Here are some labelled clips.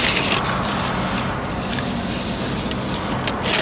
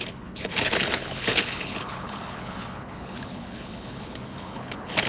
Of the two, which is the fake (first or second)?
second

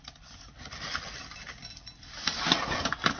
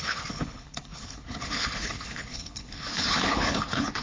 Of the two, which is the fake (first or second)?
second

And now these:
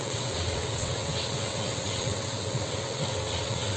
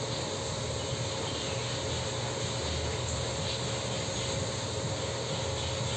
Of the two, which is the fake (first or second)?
first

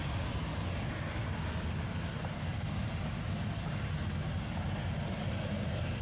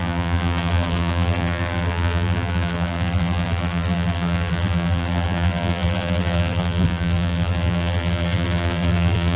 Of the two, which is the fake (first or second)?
second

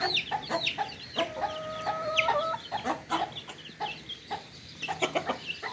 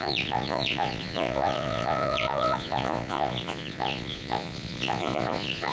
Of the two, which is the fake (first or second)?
second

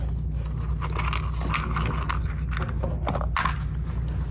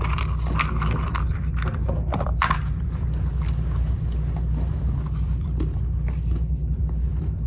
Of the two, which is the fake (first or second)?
second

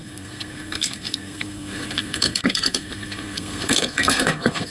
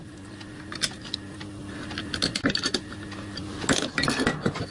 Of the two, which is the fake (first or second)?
first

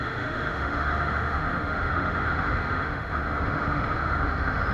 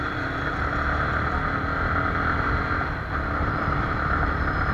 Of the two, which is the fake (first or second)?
first